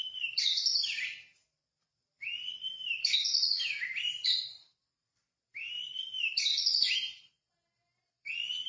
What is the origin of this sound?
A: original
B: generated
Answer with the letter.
B